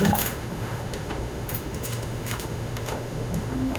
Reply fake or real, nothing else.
fake